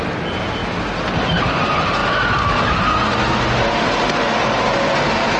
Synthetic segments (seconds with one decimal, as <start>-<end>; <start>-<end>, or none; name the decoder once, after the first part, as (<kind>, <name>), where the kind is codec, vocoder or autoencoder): none